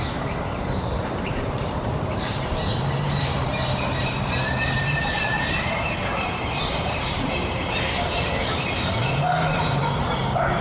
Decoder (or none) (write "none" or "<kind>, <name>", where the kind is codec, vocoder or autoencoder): vocoder, BigVGAN v2